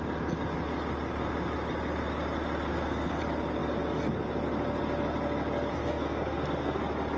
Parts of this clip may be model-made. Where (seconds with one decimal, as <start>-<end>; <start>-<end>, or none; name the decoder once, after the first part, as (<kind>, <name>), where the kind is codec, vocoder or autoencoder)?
2.7-3.2 (codec, SNAC); 5.7-6.8